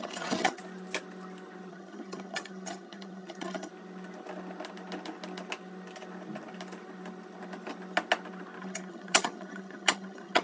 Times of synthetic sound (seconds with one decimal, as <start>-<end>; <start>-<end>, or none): 0.0-0.6; 1.7-3.7; 8.6-10.4